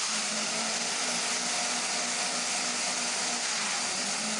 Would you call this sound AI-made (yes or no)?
no